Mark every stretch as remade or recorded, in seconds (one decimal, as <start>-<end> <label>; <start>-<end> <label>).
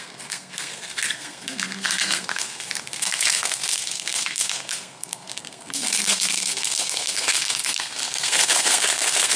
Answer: 0.0-9.4 remade